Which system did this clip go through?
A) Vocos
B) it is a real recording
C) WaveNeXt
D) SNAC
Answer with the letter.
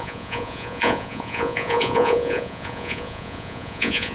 A